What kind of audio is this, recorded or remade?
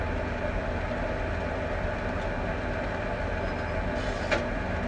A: recorded